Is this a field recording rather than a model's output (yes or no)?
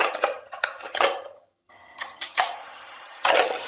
no